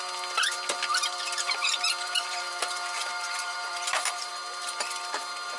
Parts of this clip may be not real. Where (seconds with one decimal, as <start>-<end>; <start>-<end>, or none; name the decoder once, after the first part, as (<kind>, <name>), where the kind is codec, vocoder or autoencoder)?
0.9-4.3 (vocoder, BigVGAN v2)